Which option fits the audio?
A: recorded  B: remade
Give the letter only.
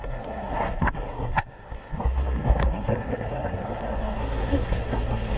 B